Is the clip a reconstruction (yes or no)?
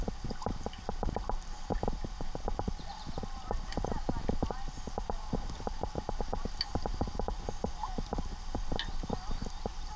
no